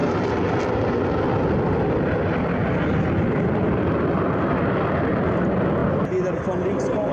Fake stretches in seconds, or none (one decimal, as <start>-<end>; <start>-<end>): 0.0-1.0; 2.6-5.1